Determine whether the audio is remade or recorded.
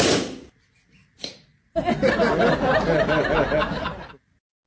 recorded